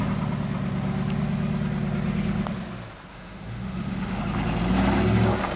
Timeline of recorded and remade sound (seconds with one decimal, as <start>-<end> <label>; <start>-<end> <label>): 0.0-3.1 recorded; 3.1-4.2 remade; 4.2-5.6 recorded